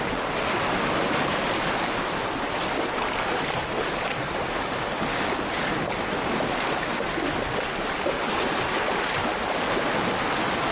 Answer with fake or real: real